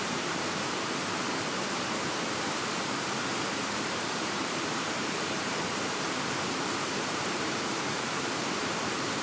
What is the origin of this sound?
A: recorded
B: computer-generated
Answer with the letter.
B